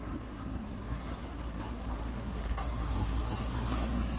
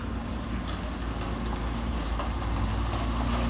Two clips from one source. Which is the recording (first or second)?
second